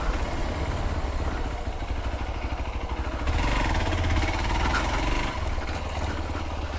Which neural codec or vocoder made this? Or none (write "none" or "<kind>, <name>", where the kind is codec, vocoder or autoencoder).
none